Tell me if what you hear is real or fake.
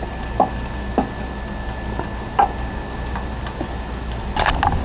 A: real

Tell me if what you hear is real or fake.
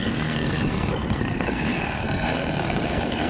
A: fake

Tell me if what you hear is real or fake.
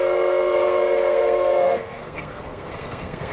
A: fake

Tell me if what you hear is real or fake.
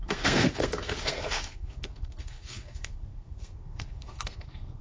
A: fake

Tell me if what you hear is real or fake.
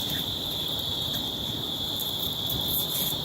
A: fake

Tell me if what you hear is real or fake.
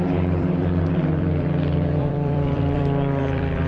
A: fake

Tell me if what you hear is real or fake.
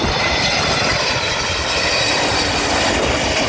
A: real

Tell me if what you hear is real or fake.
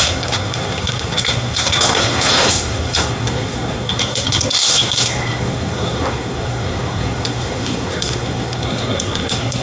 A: fake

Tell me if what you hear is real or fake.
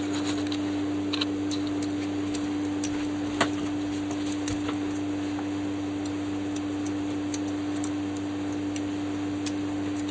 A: fake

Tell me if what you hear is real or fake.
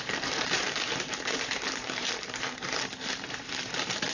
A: fake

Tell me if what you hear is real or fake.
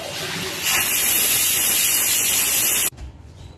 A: fake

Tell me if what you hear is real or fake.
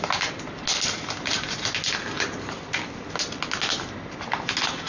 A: real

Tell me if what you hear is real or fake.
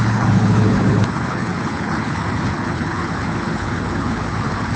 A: fake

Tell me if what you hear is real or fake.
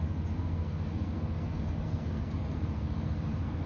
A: fake